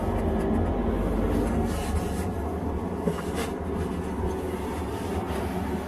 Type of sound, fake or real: real